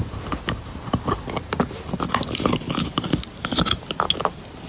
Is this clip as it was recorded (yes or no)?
yes